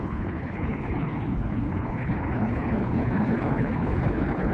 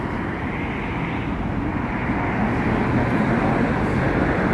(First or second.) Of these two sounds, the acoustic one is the second